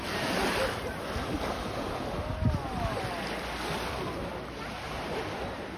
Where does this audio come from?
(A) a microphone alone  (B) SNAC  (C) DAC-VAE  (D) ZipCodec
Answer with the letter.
A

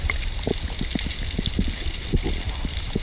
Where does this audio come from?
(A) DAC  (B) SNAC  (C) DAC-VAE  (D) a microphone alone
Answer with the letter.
D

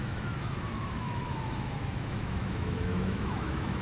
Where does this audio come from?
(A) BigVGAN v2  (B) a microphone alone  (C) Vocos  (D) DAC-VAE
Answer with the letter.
D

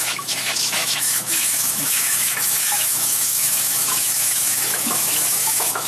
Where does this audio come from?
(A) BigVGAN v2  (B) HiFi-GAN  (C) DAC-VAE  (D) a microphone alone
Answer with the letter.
C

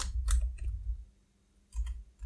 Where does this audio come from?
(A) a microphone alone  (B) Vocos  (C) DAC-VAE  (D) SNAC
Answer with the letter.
A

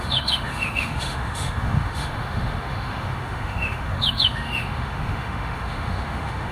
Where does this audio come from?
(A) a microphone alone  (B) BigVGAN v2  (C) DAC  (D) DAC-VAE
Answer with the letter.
D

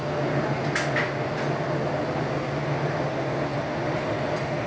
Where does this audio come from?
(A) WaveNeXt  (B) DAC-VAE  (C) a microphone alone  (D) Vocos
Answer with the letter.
C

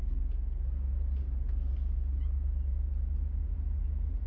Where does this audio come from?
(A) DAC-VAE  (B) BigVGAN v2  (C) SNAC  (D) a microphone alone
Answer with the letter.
D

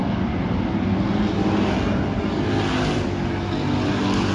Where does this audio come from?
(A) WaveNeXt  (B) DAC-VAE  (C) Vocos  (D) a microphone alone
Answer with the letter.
D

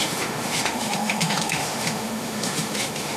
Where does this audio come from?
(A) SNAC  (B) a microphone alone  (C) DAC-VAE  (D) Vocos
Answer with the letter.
C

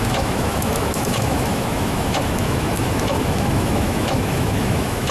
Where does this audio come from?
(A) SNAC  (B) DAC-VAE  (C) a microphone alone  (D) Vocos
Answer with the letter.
B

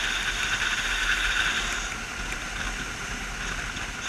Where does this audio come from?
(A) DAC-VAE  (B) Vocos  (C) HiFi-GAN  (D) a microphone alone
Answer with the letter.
D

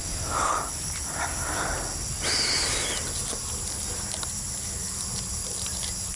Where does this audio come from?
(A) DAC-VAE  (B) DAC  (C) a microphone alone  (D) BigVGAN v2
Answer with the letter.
C